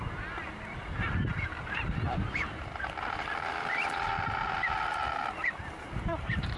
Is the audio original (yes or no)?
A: no